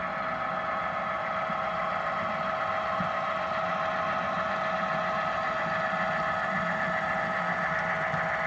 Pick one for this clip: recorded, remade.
recorded